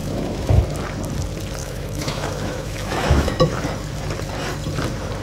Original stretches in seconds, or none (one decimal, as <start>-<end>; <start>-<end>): 0.6-1.6; 3.5-5.2

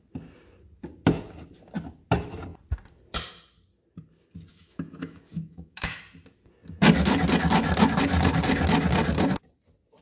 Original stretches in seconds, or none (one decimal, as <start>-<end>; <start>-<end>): 0.0-4.5; 6.0-10.0

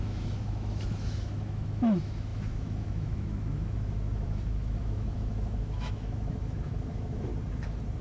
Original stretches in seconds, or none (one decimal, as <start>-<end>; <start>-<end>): 7.3-8.0